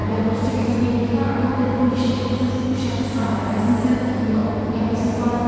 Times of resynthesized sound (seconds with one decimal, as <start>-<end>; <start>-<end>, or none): none